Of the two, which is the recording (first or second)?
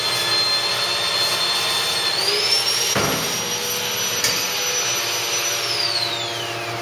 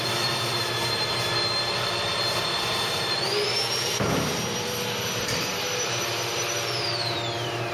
first